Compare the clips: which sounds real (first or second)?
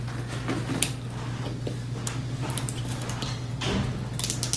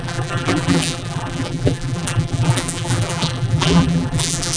first